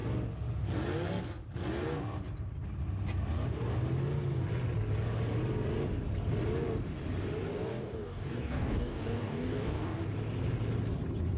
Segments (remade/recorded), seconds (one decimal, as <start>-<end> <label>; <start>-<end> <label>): 0.0-7.7 recorded; 7.7-10.0 remade; 10.0-11.4 recorded